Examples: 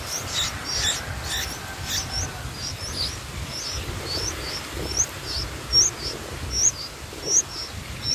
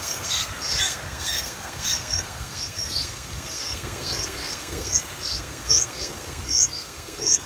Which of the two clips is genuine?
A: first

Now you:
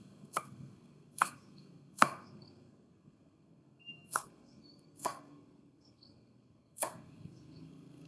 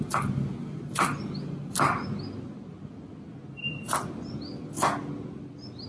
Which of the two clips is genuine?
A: second